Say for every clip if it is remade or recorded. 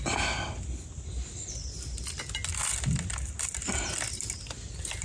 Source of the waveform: recorded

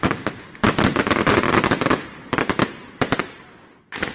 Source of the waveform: recorded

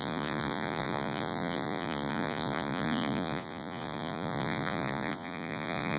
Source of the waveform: remade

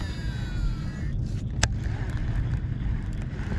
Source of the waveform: recorded